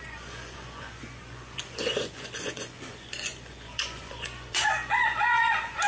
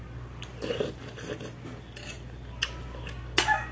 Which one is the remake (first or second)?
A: first